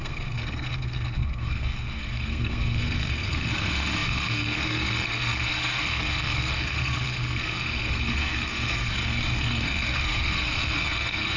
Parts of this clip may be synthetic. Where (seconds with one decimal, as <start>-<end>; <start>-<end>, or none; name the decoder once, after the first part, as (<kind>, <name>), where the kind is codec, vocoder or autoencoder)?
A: 0.0-11.4 (codec, SNAC)